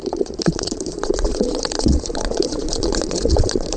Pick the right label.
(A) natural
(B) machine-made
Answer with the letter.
B